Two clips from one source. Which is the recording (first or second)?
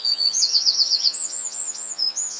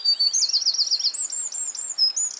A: second